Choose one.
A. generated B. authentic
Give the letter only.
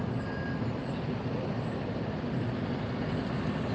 B